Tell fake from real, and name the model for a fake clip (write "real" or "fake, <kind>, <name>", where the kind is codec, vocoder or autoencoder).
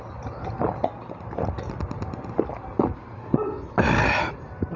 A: real